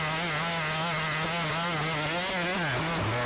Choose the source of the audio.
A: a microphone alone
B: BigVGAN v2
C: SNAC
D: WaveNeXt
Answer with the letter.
A